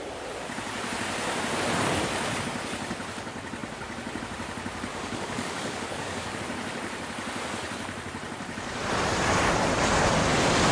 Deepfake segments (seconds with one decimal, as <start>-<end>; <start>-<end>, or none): 4.9-6.4